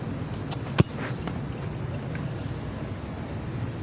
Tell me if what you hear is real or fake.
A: real